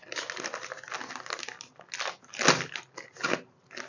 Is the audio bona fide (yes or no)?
yes